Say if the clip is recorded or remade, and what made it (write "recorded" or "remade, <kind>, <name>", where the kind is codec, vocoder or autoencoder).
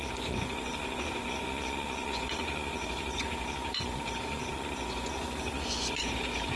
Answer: remade, vocoder, Vocos